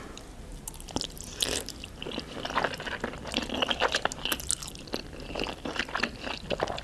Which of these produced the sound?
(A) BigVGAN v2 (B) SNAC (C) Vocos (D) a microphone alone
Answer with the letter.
D